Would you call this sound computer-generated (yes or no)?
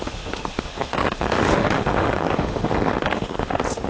yes